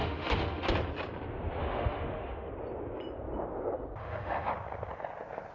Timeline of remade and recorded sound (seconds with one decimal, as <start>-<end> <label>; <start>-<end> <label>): 0.0-0.7 remade; 0.7-1.6 recorded; 1.6-2.5 remade; 2.5-4.0 recorded; 4.0-4.5 remade; 4.5-5.5 recorded